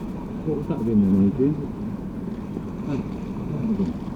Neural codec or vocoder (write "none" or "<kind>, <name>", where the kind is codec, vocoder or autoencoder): none